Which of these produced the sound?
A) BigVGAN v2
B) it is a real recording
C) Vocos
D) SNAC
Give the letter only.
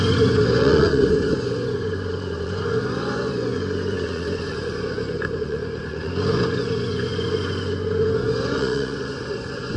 C